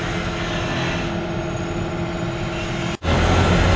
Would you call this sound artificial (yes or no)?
no